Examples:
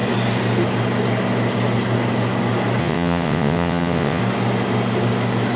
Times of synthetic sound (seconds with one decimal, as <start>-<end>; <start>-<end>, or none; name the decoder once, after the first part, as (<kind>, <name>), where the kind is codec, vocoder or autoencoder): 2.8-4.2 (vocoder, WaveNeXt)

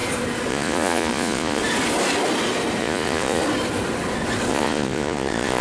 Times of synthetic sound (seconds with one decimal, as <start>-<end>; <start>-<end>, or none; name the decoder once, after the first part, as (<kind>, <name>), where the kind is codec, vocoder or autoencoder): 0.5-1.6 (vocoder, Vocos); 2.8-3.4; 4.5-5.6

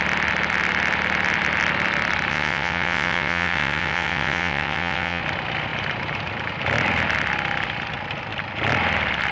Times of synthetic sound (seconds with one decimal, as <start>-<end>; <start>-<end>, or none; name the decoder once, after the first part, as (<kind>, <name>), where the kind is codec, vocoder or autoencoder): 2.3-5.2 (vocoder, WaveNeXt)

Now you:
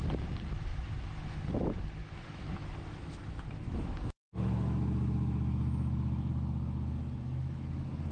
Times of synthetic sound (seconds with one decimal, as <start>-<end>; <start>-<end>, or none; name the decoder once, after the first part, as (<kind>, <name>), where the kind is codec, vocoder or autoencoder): 0.7-1.5 (autoencoder, DAC-VAE); 2.0-6.3

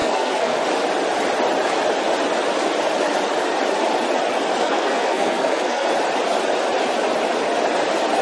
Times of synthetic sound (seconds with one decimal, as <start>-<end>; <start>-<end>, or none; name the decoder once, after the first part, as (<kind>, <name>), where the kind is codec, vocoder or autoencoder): 0.0-0.6 (codec, SNAC); 4.6-5.9

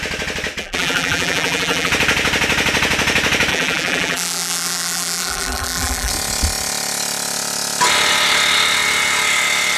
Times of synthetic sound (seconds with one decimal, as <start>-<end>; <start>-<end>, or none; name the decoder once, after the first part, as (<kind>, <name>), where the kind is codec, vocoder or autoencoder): 0.6-1.9 (vocoder, BigVGAN v2); 3.5-6.1

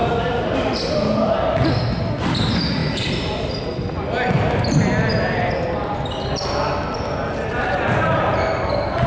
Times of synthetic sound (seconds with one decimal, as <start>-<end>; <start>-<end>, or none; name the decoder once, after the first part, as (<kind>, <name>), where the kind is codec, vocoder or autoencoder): 0.0-2.1 (vocoder, BigVGAN v2); 2.8-3.6; 5.1-7.9